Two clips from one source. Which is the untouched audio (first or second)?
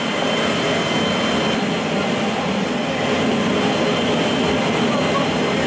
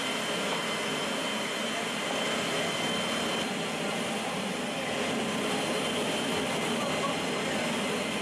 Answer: first